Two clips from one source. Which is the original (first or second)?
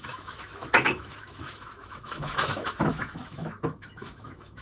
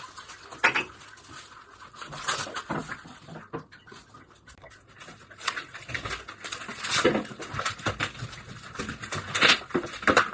second